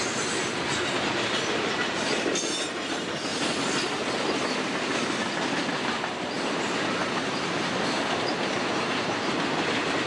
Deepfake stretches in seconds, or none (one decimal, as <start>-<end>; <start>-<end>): 7.0-9.3